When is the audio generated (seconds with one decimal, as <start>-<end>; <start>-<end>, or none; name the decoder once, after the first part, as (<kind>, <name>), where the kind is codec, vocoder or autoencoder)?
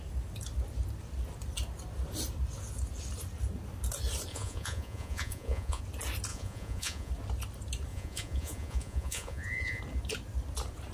4.3-5.8 (vocoder, Vocos); 6.3-7.1; 7.9-9.8